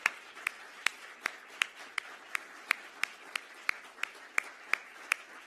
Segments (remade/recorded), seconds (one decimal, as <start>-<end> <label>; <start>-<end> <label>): 0.0-5.5 recorded